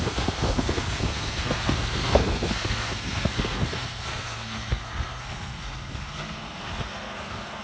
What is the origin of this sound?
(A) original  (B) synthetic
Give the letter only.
B